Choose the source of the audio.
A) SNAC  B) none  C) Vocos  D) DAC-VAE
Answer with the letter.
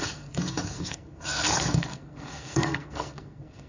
A